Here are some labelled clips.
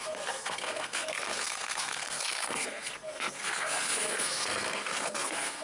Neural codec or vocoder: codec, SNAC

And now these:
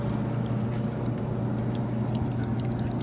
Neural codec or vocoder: none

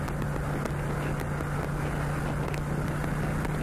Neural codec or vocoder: none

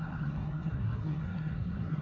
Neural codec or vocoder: codec, SNAC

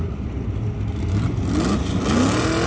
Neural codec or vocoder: none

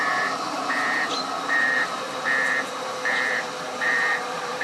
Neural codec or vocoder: vocoder, BigVGAN v2